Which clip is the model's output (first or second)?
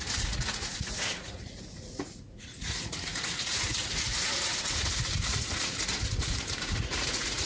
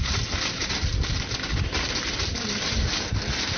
first